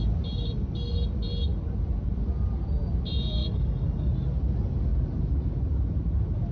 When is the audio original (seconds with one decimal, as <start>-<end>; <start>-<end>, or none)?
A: 0.0-3.4; 4.1-6.5